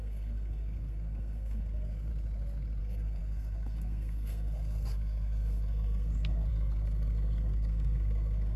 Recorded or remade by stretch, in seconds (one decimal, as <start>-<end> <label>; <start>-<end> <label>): 0.0-2.1 remade; 2.1-2.8 recorded; 2.8-8.6 remade